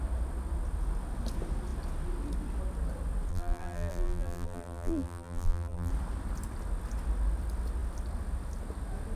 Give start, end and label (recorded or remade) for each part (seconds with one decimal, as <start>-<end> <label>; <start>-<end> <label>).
0.0-3.3 recorded; 3.3-5.9 remade; 5.9-9.2 recorded